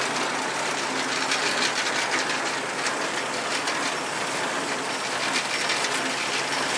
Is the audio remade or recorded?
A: recorded